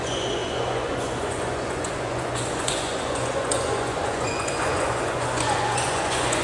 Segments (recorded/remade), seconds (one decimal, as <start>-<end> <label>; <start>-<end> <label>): 0.0-6.4 remade